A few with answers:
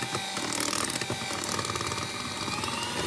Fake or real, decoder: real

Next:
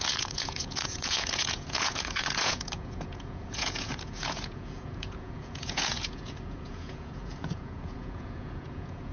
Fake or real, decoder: fake, vocoder, Vocos